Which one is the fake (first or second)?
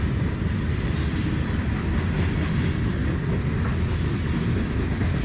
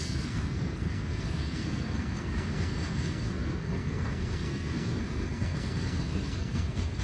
second